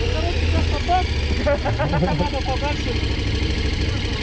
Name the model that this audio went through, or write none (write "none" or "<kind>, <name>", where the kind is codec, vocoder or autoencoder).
none